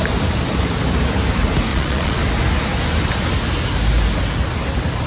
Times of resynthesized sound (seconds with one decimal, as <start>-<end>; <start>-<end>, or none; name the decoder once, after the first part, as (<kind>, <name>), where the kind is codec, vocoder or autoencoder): 1.7-2.2 (vocoder, Vocos)